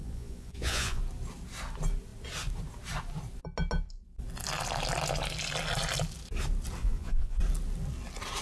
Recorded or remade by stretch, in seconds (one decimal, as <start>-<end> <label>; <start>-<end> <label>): 0.0-1.0 remade; 1.0-6.8 recorded; 6.8-7.4 remade; 7.4-8.4 recorded

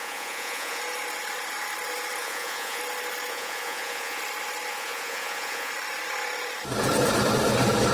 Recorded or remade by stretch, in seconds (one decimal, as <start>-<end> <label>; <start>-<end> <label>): 0.0-0.8 remade; 0.8-2.2 recorded; 2.2-2.8 remade; 2.8-3.3 recorded; 3.3-4.2 remade; 4.2-4.7 recorded; 4.7-5.7 remade; 5.7-7.9 recorded

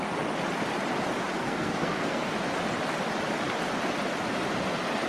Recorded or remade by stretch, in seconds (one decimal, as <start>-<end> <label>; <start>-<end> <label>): 0.0-1.4 recorded; 1.4-2.3 remade; 2.3-5.1 recorded

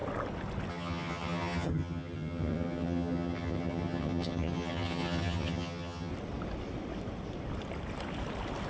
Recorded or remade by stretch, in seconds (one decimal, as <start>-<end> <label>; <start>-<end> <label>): 0.0-0.7 recorded; 0.7-6.1 remade; 6.1-8.7 recorded